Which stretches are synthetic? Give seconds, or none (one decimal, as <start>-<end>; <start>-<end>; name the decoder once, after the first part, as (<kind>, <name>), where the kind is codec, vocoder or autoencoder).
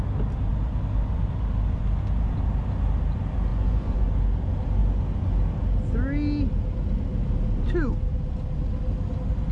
3.5-4.1 (vocoder, Vocos)